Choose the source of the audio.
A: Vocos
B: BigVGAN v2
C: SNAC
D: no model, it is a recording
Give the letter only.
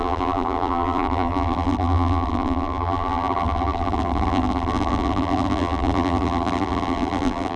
B